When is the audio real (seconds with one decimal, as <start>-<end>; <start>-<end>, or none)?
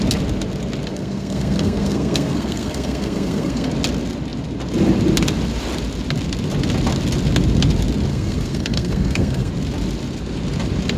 0.0-0.9; 3.7-8.1; 9.5-11.0